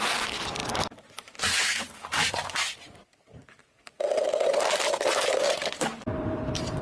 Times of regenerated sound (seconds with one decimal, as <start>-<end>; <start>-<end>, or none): 0.0-0.6; 2.0-3.6; 6.0-6.8